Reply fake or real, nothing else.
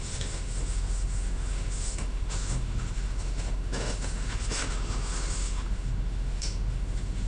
fake